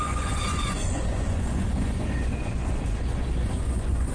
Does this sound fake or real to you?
fake